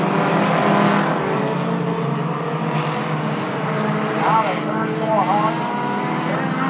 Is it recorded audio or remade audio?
recorded